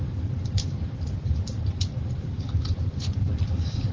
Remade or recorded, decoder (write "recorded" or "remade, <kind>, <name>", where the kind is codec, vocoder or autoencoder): remade, vocoder, BigVGAN v2